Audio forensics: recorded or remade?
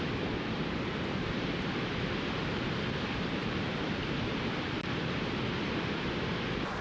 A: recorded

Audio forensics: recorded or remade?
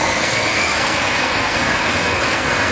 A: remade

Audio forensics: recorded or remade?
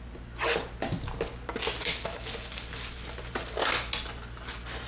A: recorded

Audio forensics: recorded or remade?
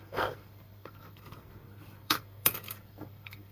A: remade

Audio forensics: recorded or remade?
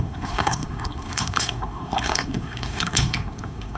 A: remade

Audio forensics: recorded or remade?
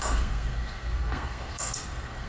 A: remade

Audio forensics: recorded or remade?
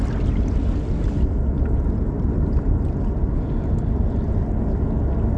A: recorded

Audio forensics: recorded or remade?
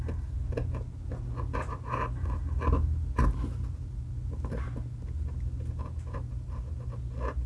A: recorded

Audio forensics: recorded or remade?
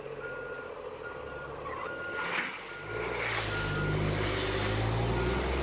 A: recorded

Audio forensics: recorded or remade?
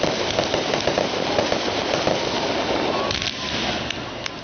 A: recorded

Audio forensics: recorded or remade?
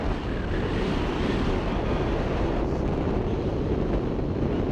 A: recorded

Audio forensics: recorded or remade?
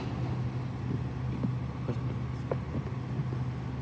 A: recorded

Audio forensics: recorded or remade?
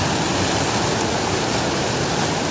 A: recorded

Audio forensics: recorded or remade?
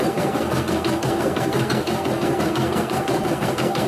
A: remade